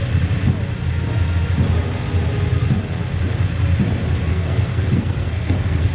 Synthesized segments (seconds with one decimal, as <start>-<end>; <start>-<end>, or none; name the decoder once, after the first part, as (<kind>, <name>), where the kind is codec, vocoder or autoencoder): 4.3-5.9 (codec, SNAC)